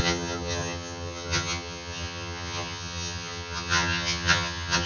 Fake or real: fake